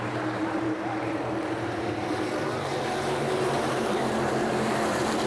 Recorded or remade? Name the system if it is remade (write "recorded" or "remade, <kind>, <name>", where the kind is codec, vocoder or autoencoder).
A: remade, vocoder, BigVGAN v2